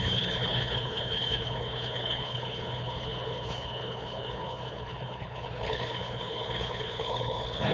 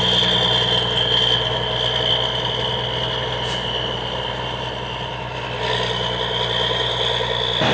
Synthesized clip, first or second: first